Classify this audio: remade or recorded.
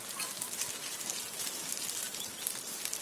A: recorded